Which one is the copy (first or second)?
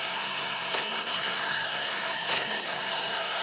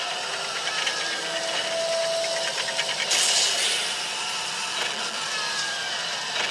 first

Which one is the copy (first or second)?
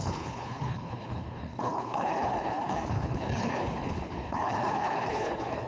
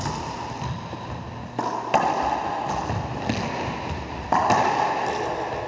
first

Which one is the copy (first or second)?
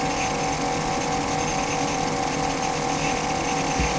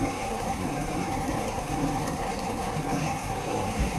second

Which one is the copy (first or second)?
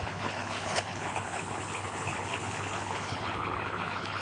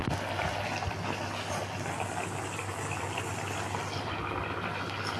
first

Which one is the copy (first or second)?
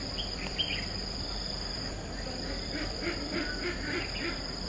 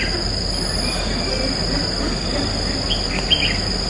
first